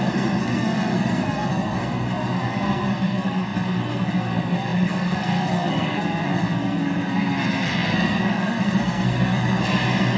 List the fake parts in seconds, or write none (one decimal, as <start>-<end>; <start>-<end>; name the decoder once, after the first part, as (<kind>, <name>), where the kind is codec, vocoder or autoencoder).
0.0-10.2 (codec, SNAC)